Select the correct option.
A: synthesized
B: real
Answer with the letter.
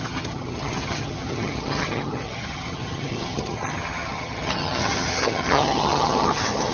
A